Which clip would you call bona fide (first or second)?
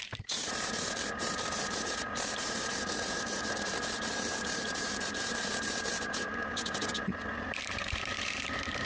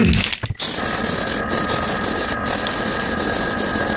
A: second